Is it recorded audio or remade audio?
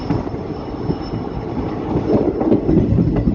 recorded